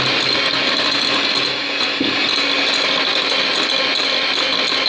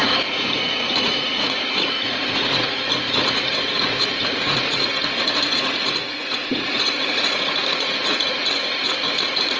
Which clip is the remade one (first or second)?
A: second